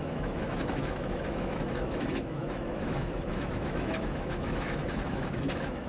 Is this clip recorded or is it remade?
remade